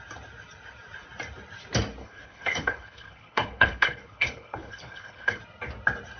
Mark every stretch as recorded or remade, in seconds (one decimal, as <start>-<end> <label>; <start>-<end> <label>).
0.0-2.0 recorded; 2.0-5.4 remade; 5.4-6.2 recorded